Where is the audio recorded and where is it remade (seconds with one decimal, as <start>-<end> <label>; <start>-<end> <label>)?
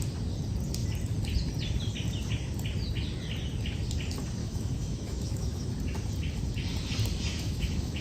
0.0-4.4 recorded; 4.4-5.7 remade; 5.7-7.3 recorded; 7.3-8.0 remade